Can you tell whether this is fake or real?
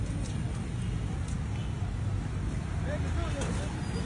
real